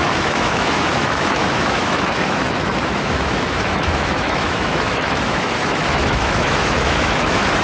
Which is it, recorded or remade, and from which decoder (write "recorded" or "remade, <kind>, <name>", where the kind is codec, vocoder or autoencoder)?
remade, autoencoder, DAC-VAE